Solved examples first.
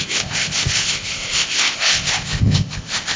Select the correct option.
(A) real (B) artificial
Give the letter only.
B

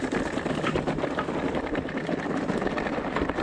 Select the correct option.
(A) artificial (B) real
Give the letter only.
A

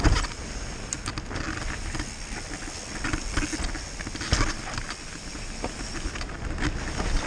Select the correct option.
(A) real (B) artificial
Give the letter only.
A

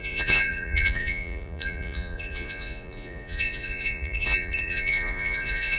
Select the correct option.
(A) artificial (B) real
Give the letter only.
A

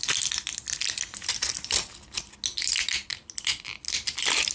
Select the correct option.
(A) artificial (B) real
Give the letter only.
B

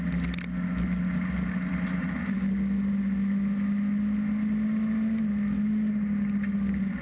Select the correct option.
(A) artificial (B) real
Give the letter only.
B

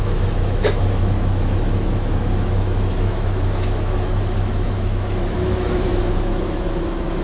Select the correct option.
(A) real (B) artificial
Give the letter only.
B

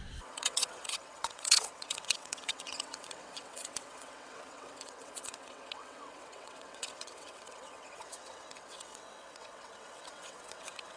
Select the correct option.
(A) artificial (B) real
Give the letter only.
A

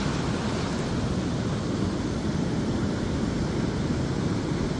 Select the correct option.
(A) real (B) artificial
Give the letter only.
A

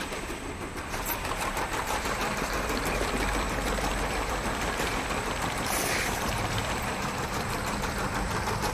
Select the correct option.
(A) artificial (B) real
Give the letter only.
A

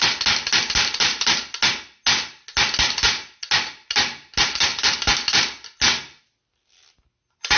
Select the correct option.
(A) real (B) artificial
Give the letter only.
A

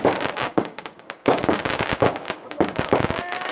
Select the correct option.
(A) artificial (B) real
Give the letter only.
A